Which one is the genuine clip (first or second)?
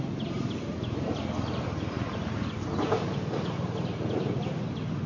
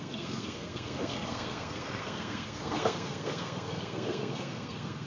first